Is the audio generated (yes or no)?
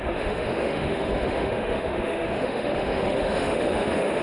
yes